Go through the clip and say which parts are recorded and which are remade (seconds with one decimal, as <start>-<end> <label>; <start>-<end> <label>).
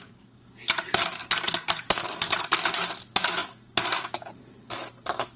0.0-5.4 recorded